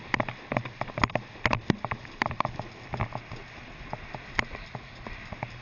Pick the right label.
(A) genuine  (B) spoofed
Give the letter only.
A